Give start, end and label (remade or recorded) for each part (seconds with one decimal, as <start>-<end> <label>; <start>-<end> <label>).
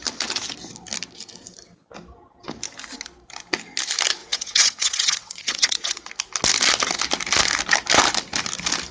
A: 0.0-4.2 recorded; 4.2-6.1 remade; 6.1-8.9 recorded